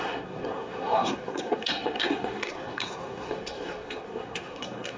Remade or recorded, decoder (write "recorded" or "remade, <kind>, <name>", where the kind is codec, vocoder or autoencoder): remade, codec, SNAC